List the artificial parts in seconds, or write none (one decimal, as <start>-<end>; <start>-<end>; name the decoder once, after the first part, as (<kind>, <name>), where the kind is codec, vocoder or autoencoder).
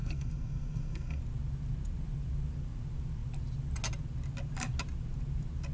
0.0-1.2 (codec, SNAC)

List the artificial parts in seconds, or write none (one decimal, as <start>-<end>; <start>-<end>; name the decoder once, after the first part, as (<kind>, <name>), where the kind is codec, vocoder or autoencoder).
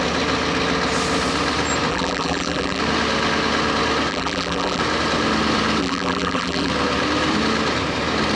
1.9-2.8 (vocoder, BigVGAN v2); 4.1-4.8; 5.8-6.7